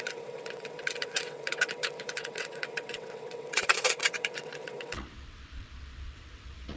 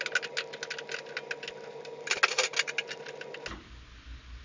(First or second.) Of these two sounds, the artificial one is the first